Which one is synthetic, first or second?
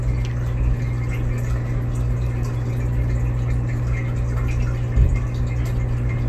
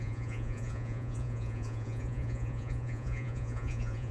second